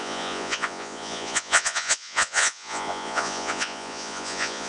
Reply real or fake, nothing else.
fake